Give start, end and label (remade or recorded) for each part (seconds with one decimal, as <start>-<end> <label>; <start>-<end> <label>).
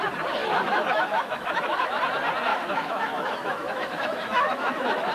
0.0-0.4 recorded; 0.4-2.0 remade; 2.0-2.5 recorded; 2.5-5.1 remade